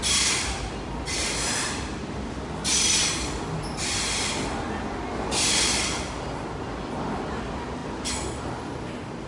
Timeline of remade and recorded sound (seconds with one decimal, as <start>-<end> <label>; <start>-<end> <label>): 0.0-9.3 recorded